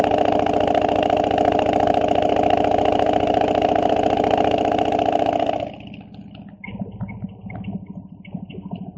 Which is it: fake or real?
real